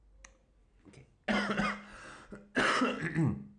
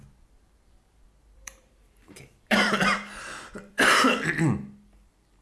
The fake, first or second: second